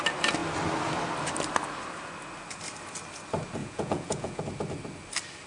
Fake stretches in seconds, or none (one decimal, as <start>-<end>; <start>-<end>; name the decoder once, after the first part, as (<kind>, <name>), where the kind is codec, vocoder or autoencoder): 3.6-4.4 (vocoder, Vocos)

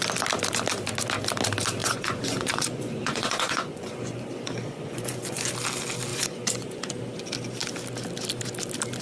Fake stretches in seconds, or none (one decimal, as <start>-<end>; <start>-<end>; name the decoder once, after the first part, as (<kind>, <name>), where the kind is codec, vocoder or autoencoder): 1.8-5.5 (vocoder, Vocos); 6.1-7.0

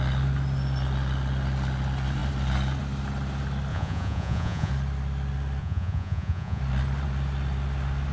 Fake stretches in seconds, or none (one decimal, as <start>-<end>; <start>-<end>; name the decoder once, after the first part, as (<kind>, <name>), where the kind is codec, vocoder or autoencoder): 3.7-4.7 (vocoder, Vocos); 5.6-6.6

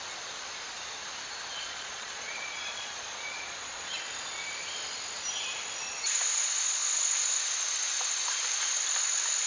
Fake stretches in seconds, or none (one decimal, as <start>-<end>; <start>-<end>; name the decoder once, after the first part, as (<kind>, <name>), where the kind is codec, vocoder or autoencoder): 1.5-3.9 (vocoder, Vocos)

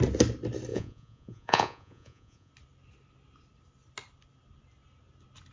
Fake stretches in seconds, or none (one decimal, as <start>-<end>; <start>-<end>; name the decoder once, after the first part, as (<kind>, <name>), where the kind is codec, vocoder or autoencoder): 0.7-2.5 (vocoder, Vocos)

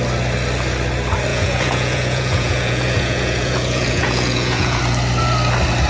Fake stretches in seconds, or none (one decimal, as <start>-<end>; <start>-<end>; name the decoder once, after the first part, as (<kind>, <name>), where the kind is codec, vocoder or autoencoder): 1.3-4.8 (vocoder, Vocos)